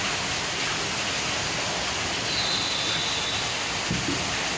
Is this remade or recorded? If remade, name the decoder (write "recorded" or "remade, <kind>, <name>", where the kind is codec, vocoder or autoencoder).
recorded